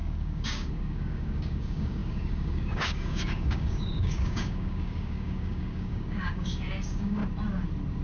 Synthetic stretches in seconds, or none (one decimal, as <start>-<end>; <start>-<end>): 0.0-7.2